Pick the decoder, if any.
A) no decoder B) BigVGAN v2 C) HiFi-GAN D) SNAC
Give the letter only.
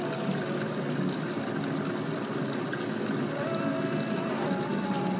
A